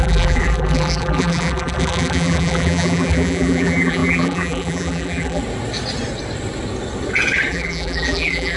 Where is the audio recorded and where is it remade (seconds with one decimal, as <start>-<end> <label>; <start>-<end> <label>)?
0.0-5.4 remade; 5.4-7.5 recorded; 7.5-8.6 remade